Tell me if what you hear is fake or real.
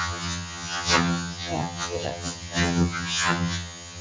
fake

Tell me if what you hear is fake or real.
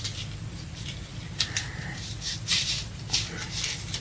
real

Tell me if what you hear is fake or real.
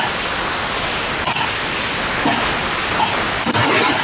real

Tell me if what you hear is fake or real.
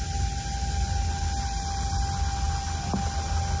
real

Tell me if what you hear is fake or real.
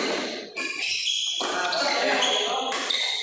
real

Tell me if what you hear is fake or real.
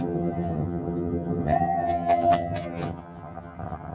fake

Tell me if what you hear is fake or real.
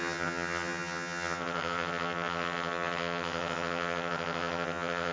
fake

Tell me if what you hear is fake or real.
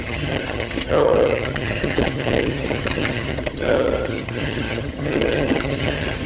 fake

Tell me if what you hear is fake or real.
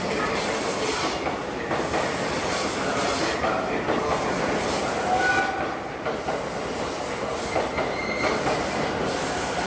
real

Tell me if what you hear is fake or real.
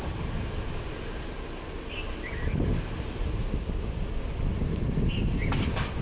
real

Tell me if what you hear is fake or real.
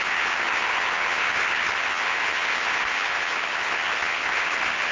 fake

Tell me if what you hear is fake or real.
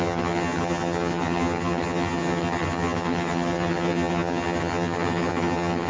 fake